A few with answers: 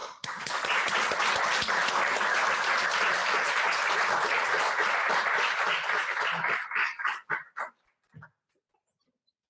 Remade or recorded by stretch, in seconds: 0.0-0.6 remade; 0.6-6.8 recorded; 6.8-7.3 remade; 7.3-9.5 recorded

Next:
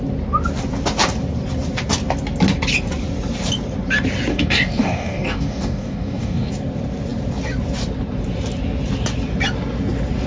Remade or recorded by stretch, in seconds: 0.0-4.3 recorded; 4.3-6.5 remade; 6.5-10.3 recorded

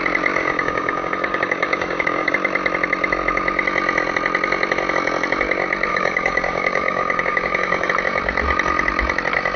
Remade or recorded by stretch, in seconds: 0.0-0.4 recorded; 0.4-2.3 remade; 2.3-5.9 recorded; 5.9-7.9 remade; 7.9-9.6 recorded

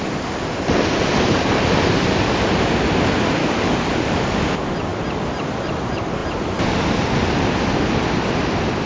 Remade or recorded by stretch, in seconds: 0.0-3.4 recorded; 3.4-4.4 remade; 4.4-8.9 recorded

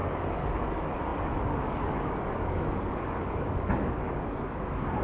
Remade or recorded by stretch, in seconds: 0.0-5.0 remade

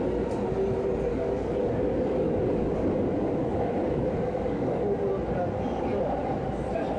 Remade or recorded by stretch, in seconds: 0.0-1.1 recorded; 1.1-5.1 remade; 5.1-7.0 recorded